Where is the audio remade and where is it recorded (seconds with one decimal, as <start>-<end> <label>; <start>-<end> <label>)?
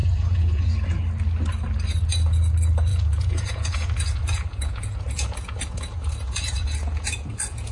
0.0-1.0 remade; 1.0-2.9 recorded; 2.9-7.7 remade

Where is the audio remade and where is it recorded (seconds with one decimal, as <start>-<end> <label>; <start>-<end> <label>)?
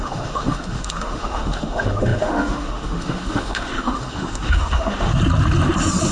0.0-5.1 remade; 5.1-6.1 recorded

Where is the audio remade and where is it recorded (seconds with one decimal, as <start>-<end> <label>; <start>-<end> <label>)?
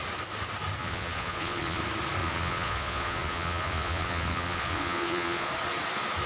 0.0-0.8 recorded; 0.8-1.8 remade; 1.8-2.2 recorded; 2.2-5.5 remade; 5.5-6.3 recorded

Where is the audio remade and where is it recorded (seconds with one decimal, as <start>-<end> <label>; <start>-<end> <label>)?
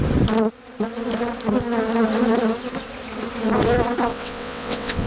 0.0-4.1 recorded; 4.1-5.1 remade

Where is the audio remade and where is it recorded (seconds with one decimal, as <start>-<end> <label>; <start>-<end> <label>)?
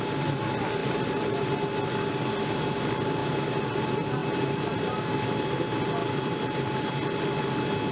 0.0-0.8 recorded; 0.8-1.5 remade; 1.5-3.2 recorded; 3.2-3.8 remade; 3.8-4.2 recorded; 4.2-5.6 remade; 5.6-6.0 recorded; 6.0-6.9 remade; 6.9-7.9 recorded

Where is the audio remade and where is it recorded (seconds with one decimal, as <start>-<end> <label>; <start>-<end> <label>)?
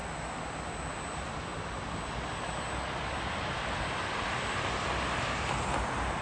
0.0-0.9 recorded; 0.9-1.5 remade; 1.5-5.2 recorded; 5.2-6.2 remade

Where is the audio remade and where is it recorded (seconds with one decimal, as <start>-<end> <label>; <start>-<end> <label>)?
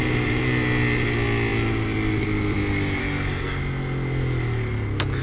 0.0-3.0 recorded; 3.0-3.6 remade; 3.6-5.2 recorded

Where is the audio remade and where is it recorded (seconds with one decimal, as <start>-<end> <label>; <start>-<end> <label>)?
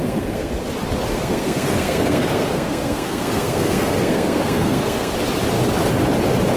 0.0-0.5 remade; 0.5-1.1 recorded; 1.1-5.1 remade; 5.1-6.6 recorded